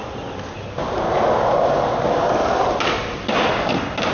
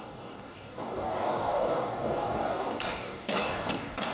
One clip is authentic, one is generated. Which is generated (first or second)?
second